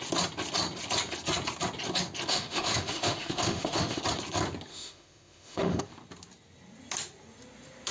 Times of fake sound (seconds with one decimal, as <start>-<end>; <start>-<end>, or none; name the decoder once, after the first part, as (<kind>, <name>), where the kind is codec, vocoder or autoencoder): 2.3-4.0 (autoencoder, DAC-VAE); 4.7-5.8